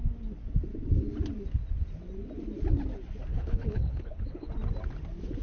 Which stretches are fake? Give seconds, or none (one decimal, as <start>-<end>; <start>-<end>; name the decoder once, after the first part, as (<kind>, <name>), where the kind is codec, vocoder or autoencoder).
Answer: 3.3-4.5 (codec, HILCodec)